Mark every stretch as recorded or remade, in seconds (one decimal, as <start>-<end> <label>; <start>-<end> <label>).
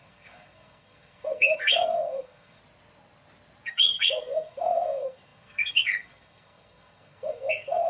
0.0-2.6 remade; 2.6-3.7 recorded; 3.7-7.9 remade